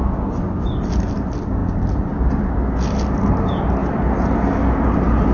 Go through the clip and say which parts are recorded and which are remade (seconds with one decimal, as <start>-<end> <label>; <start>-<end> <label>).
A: 0.0-5.3 recorded